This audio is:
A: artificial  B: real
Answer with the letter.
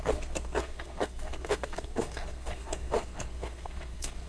A